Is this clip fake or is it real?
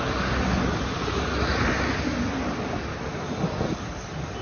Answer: real